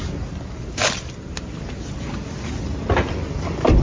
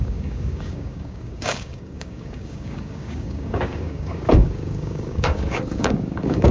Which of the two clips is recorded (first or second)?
first